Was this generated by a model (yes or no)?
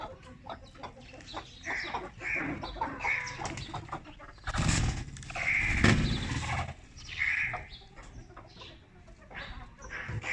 no